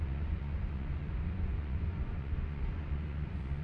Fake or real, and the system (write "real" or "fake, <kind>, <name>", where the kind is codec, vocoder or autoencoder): fake, vocoder, Vocos